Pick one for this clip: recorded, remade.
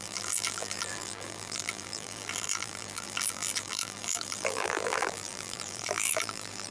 remade